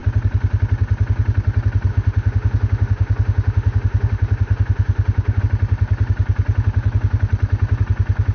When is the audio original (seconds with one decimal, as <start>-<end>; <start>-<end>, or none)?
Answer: 0.0-1.9; 5.4-8.3